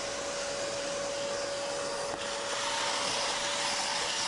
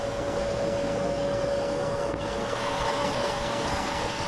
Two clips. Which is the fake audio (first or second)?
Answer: second